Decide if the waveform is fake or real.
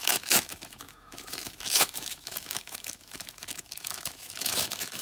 fake